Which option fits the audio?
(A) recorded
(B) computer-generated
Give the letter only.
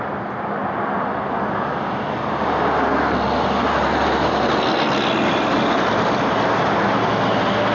A